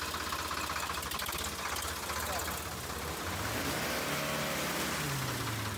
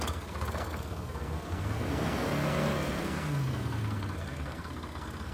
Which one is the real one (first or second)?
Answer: first